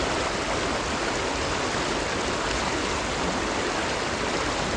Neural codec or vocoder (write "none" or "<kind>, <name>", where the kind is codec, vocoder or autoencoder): none